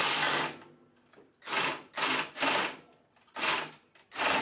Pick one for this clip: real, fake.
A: real